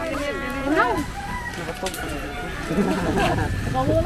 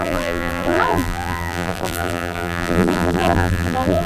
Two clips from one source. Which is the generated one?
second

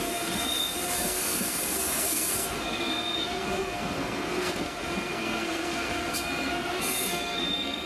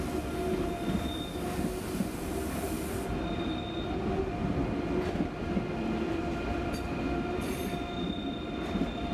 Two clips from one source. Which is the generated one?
first